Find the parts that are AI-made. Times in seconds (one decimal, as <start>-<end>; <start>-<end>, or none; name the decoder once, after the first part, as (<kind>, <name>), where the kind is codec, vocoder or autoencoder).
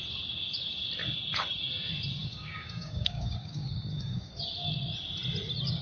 2.2-4.3 (codec, DAC)